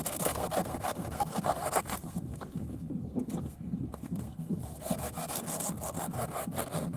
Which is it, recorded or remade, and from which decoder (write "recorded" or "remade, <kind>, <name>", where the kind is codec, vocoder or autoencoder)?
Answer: remade, codec, SNAC